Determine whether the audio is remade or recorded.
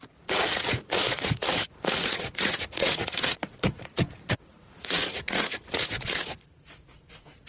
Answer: remade